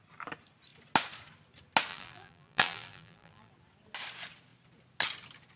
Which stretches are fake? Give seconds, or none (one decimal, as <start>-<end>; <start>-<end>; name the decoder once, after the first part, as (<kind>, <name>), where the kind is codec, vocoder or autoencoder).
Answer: 1.9-3.5 (vocoder, BigVGAN v2)